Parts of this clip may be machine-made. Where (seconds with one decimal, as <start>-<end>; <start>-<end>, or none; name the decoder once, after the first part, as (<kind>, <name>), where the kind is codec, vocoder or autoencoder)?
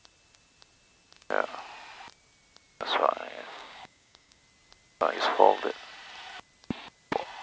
3.0-4.4 (codec, DAC)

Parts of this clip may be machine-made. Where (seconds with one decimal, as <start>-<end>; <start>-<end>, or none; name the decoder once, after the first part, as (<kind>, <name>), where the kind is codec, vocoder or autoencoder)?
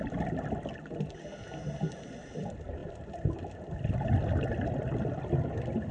2.8-4.2 (vocoder, BigVGAN v2)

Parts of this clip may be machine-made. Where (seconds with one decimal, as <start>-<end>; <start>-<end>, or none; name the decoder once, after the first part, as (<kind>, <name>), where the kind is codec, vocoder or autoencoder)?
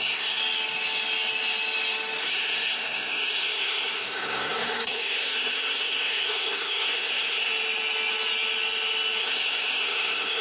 0.0-0.4 (codec, SNAC); 2.2-7.5; 9.2-10.4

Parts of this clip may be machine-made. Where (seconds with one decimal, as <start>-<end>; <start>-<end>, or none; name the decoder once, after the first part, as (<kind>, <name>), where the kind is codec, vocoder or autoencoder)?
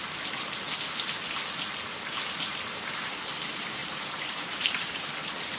3.8-5.1 (vocoder, BigVGAN v2)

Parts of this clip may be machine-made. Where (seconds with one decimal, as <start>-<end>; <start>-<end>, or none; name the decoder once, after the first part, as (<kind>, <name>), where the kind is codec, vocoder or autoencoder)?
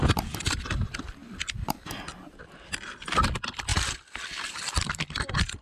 none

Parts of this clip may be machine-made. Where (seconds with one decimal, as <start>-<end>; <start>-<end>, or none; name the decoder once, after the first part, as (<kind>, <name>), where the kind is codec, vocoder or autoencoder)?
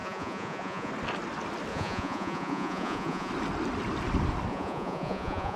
0.0-0.9 (vocoder, Vocos); 1.7-3.3; 4.5-5.6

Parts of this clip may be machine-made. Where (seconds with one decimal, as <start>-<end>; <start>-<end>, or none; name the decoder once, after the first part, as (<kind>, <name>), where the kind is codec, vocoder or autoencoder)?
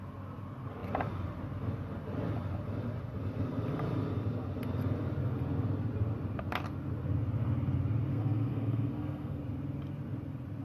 8.1-9.4 (codec, SNAC)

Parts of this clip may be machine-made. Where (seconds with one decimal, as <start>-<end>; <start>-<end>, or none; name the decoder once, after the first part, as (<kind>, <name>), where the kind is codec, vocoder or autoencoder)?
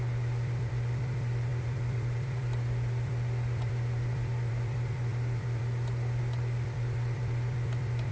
0.0-8.1 (vocoder, BigVGAN v2)